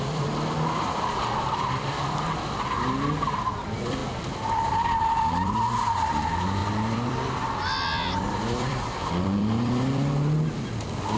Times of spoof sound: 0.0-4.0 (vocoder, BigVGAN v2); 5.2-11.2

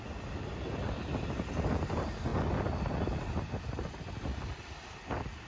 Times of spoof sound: none

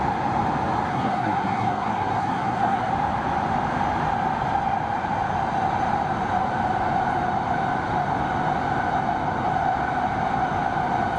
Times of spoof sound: 0.9-2.9 (codec, SNAC)

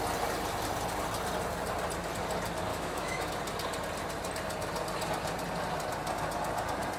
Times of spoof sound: 2.7-3.3 (autoencoder, DAC-VAE)

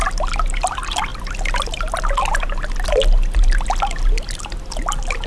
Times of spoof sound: none

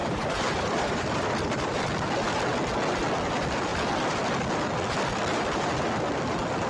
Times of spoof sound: 0.0-1.2 (vocoder, BigVGAN v2)